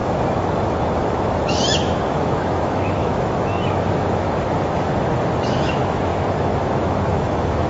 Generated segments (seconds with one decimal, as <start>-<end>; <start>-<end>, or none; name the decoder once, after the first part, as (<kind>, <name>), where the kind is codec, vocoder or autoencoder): 0.0-7.7 (autoencoder, DAC-VAE)